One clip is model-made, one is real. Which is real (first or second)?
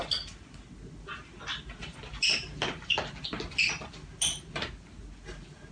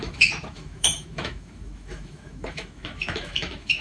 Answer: first